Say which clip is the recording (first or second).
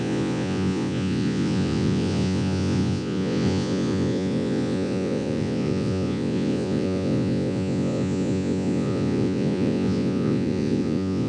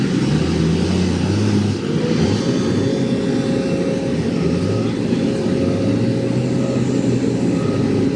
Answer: second